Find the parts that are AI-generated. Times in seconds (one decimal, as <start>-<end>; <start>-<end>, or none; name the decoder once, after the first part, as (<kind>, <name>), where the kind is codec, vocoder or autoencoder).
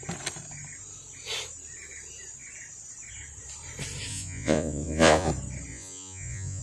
4.1-5.3 (vocoder, Vocos); 5.7-6.6